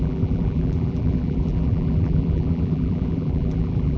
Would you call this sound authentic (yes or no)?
no